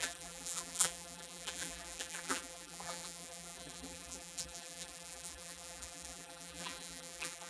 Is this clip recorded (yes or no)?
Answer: no